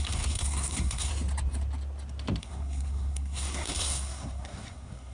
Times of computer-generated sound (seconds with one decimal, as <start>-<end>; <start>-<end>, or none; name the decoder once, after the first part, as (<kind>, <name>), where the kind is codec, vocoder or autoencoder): 0.0-1.1 (codec, SNAC); 2.4-5.1